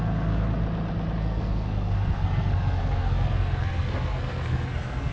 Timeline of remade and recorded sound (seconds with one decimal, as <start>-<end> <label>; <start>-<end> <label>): 0.0-0.6 remade; 0.6-1.2 recorded; 1.2-5.1 remade